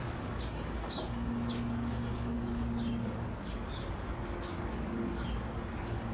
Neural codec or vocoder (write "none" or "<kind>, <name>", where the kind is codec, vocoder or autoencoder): codec, DAC